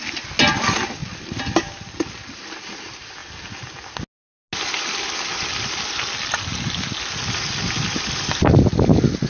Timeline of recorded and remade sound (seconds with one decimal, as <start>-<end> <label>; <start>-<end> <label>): 0.0-9.3 recorded

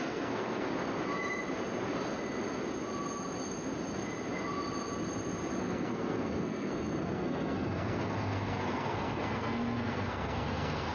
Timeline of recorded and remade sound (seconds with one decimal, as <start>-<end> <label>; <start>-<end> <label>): 0.0-0.7 remade; 0.7-5.6 recorded; 5.6-10.9 remade

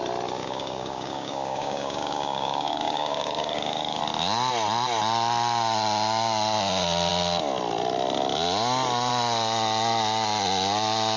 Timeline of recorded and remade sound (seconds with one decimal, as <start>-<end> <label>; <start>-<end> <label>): 0.0-0.4 recorded; 0.4-4.0 remade; 4.0-11.2 recorded

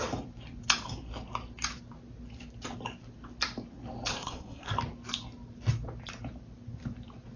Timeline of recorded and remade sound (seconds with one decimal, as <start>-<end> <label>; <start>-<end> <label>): 0.0-4.1 recorded; 4.1-4.7 remade; 4.7-7.4 recorded